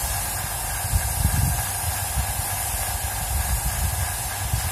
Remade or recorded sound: recorded